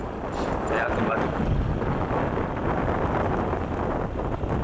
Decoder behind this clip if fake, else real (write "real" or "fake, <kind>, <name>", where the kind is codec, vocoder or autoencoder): real